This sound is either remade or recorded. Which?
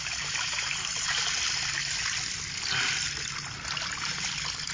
recorded